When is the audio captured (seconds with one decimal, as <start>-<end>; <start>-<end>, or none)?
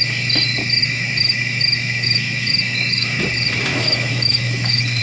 0.0-0.8; 3.2-3.7